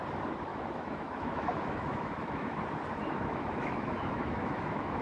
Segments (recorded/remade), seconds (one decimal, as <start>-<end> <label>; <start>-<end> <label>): 0.0-0.5 recorded; 0.5-2.6 remade; 2.6-3.0 recorded; 3.0-5.0 remade